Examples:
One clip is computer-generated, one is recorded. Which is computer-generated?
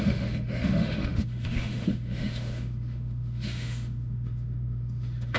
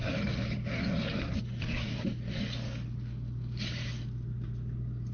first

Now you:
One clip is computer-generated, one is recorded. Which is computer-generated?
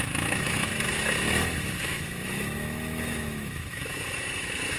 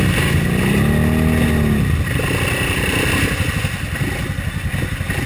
first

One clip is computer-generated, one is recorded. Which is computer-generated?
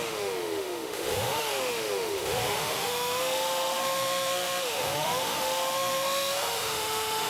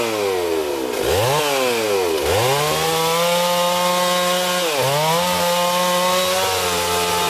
first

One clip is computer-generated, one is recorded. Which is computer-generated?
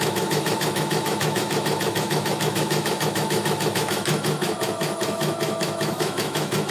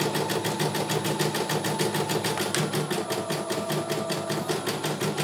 first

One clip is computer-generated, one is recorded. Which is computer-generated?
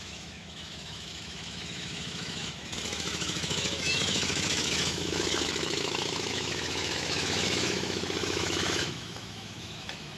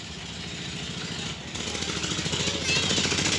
first